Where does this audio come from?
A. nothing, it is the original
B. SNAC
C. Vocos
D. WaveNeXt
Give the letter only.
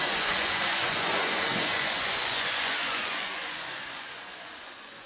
C